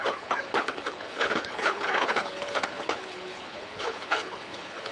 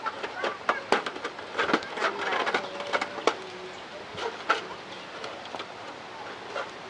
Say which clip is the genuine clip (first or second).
second